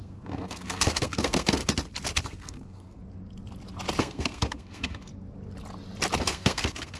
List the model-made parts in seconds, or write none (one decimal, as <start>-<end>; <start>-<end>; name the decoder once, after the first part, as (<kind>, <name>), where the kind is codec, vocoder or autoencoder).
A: 0.0-1.6 (codec, SNAC); 2.2-3.0; 4.0-5.1; 6.2-7.0